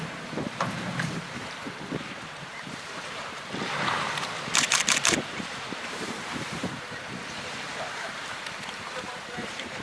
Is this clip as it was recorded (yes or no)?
no